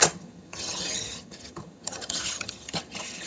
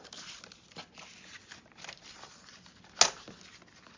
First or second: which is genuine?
second